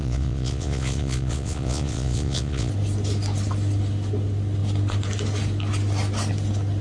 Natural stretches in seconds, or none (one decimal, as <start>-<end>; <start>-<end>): 2.7-6.8

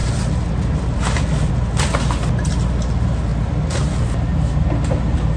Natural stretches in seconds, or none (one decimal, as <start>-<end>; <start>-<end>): 0.0-5.4

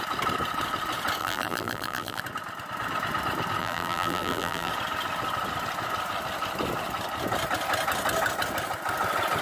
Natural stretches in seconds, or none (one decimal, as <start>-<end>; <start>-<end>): 0.0-1.2; 2.2-3.6; 4.7-9.4

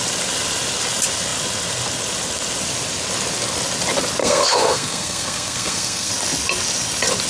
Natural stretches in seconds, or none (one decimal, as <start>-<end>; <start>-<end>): 0.0-4.2; 6.1-7.3

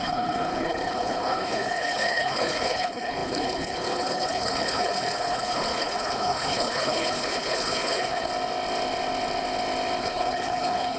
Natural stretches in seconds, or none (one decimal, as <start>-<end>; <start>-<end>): 8.3-10.0